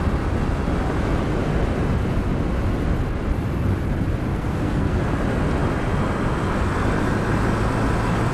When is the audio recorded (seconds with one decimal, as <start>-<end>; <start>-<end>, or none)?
0.0-4.3; 5.0-8.3